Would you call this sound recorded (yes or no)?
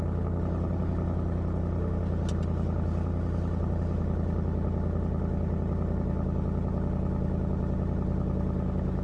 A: yes